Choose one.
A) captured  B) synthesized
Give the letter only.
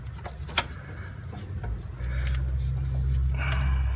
A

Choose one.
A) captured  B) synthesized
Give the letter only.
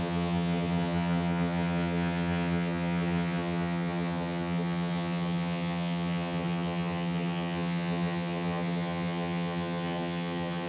B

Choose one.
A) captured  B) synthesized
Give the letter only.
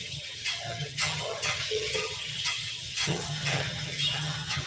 B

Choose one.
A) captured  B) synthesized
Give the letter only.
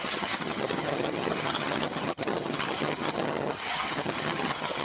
B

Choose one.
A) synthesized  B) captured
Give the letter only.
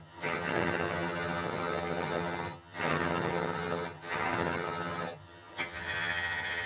A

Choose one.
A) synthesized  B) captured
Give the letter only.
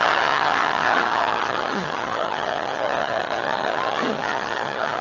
A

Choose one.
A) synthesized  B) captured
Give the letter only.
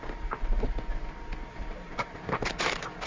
B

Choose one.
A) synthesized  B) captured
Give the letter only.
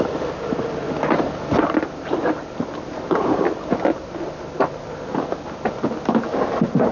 B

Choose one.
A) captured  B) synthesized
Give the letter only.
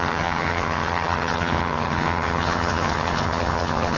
B